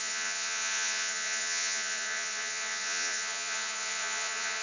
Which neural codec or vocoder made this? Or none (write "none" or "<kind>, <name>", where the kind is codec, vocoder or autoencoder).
vocoder, Vocos